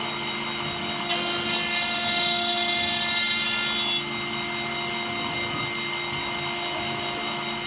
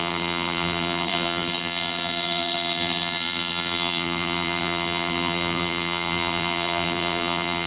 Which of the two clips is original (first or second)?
first